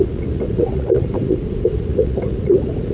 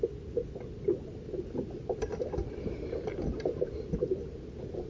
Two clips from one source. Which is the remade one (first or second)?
first